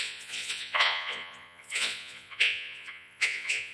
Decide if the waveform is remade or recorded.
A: remade